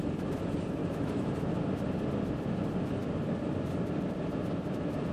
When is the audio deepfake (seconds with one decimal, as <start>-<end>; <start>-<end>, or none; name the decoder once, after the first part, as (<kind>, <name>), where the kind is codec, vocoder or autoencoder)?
0.8-1.3 (autoencoder, DAC-VAE)